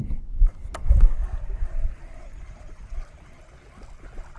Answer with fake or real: real